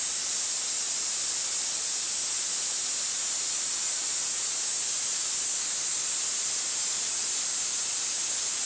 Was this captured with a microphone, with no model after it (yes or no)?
yes